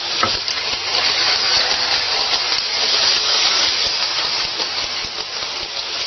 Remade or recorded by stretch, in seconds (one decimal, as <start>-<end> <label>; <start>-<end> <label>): 0.0-6.1 recorded